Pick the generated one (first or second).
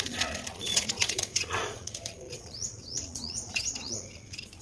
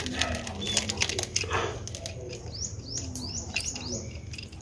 first